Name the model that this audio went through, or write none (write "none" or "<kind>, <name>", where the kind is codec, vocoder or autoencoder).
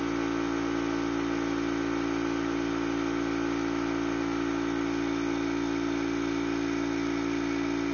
none